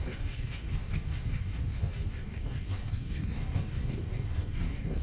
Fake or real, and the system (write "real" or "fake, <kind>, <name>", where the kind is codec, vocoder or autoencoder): fake, codec, DAC